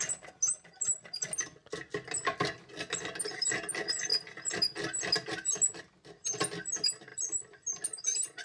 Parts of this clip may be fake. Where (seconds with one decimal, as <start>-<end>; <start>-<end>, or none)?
none